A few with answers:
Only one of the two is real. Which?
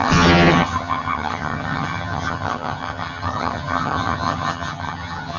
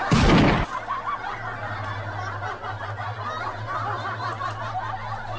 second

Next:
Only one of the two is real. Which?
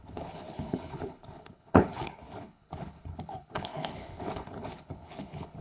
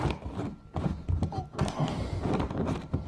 second